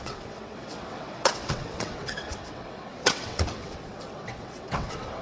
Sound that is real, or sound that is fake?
fake